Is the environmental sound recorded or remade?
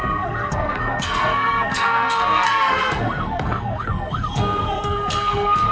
remade